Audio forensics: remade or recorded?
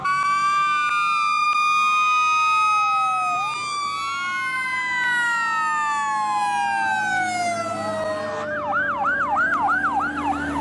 recorded